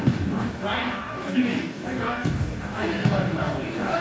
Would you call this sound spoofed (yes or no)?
yes